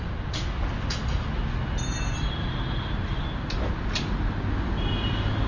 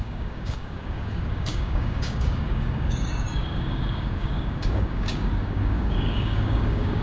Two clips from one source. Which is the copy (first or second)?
second